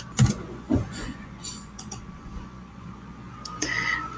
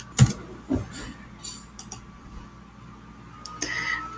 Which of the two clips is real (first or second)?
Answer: second